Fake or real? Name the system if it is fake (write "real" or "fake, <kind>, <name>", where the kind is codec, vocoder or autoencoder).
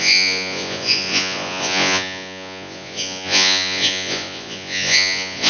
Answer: fake, vocoder, Vocos